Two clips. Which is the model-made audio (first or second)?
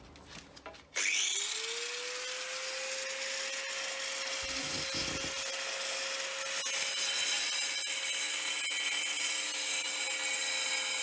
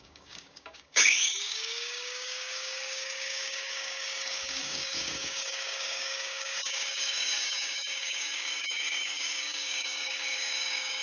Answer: second